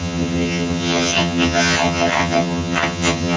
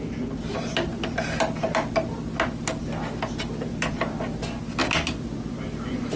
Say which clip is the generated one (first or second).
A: first